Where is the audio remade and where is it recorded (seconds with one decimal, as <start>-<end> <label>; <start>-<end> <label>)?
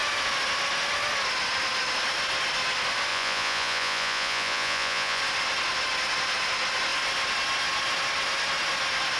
0.0-3.1 recorded; 3.1-5.2 remade; 5.2-9.2 recorded